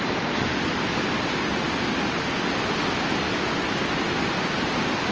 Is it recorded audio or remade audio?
recorded